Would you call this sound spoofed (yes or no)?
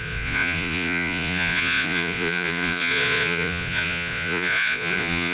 yes